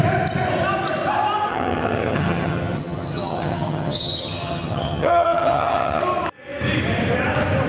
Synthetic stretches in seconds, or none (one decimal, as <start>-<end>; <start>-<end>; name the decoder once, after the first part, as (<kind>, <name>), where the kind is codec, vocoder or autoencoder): 1.5-6.0 (vocoder, HiFi-GAN)